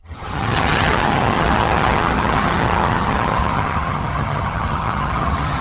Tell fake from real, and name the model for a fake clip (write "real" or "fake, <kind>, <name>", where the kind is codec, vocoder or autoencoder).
fake, vocoder, HiFi-GAN